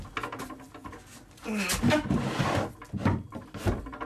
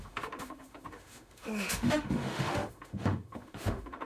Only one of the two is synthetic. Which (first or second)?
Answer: second